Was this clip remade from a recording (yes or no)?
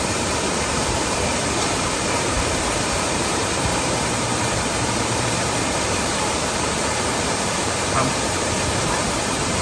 yes